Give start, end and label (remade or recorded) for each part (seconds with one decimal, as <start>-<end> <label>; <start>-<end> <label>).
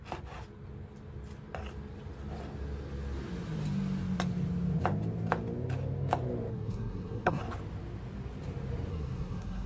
0.0-6.5 recorded; 6.5-7.4 remade; 7.4-8.9 recorded; 8.9-9.7 remade